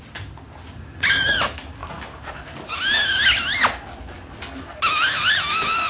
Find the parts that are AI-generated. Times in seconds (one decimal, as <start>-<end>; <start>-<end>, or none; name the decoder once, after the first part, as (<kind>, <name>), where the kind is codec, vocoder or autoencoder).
none